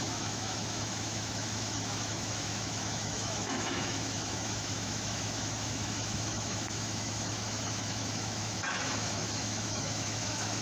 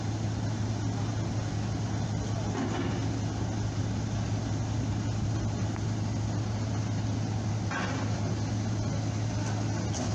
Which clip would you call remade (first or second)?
first